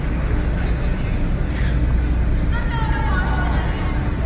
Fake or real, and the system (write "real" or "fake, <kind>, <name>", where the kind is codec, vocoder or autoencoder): real